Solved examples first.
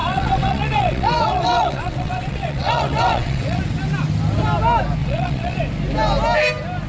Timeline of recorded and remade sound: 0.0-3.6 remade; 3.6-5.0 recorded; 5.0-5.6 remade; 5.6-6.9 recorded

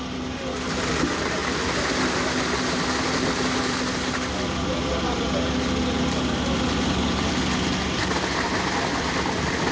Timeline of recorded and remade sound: 0.0-9.7 recorded